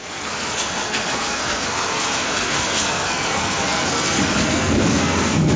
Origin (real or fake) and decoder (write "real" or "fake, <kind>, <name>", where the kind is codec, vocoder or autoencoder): fake, codec, SNAC